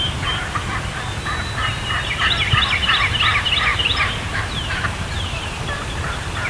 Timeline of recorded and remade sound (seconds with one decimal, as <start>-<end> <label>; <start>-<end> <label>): 0.0-3.7 recorded; 3.7-5.5 remade; 5.5-6.5 recorded